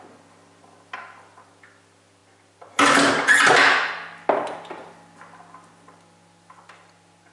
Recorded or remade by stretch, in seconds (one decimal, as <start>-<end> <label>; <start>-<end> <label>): 0.0-7.3 recorded